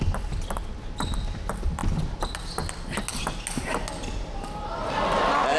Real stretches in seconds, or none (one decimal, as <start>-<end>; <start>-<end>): 0.0-5.6

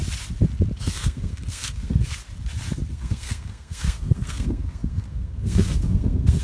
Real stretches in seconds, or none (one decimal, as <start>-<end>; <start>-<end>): 0.0-0.8; 2.2-2.9

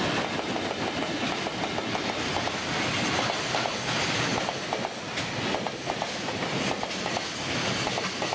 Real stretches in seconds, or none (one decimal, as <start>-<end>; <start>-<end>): 0.0-8.3

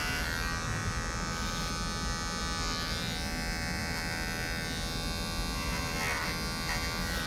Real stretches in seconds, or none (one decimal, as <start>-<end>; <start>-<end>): 0.0-7.3

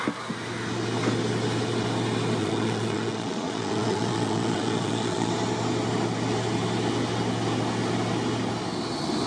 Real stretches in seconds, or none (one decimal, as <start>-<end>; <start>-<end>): 0.0-2.4; 5.3-9.3